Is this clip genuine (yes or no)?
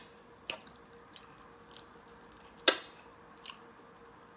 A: yes